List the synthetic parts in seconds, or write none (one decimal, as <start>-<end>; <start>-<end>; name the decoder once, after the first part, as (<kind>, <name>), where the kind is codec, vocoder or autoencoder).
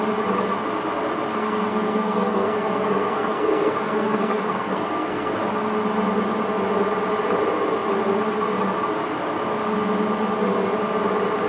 1.3-5.4 (codec, SNAC)